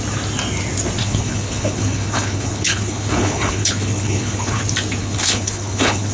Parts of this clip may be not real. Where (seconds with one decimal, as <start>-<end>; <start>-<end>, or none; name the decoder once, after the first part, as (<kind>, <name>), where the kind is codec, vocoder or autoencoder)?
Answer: 1.0-4.6 (codec, HILCodec); 5.0-6.1